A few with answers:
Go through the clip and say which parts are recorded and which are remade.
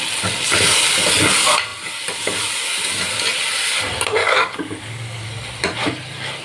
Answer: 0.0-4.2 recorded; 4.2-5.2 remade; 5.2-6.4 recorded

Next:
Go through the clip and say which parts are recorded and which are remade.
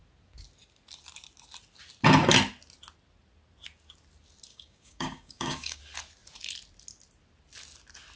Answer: 0.0-4.5 recorded; 4.5-5.8 remade; 5.8-8.2 recorded